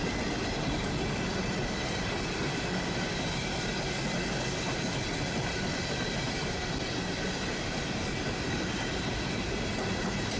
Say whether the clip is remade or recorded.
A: recorded